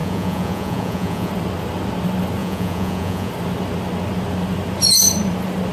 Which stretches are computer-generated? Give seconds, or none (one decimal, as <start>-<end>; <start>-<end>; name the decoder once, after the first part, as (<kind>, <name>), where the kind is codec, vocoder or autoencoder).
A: 0.0-1.3 (vocoder, Vocos); 2.4-3.3